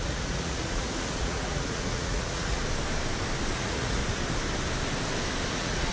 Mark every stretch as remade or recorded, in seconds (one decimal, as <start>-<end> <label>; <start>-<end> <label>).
0.0-2.6 remade; 2.6-3.5 recorded; 3.5-4.0 remade; 4.0-5.5 recorded; 5.5-5.9 remade

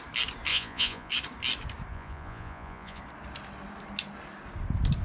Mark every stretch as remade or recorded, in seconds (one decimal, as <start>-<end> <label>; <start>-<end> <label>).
0.0-0.5 recorded; 0.5-1.1 remade; 1.1-1.9 recorded; 1.9-3.0 remade; 3.0-5.0 recorded

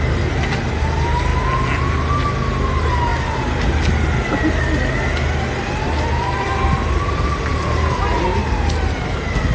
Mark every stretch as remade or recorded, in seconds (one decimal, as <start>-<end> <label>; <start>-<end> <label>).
0.0-9.5 recorded

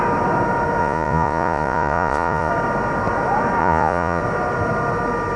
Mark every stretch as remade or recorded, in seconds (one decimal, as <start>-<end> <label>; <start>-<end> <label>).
0.0-0.8 recorded; 0.8-2.5 remade; 2.5-3.6 recorded; 3.6-4.2 remade; 4.2-5.4 recorded

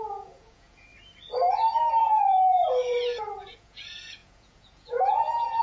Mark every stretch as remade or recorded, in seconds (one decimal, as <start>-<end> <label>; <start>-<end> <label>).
0.0-0.9 remade; 0.9-1.9 recorded; 1.9-5.6 remade

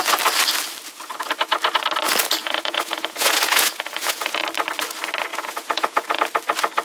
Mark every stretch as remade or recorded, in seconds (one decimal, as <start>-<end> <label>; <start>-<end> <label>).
0.0-2.4 recorded; 2.4-4.4 remade; 4.4-5.3 recorded; 5.3-6.2 remade; 6.2-6.8 recorded

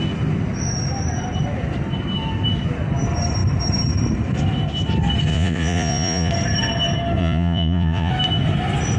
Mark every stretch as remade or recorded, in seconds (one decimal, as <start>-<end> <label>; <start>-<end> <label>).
0.0-5.3 recorded; 5.3-6.3 remade; 6.3-7.2 recorded; 7.2-8.1 remade; 8.1-9.0 recorded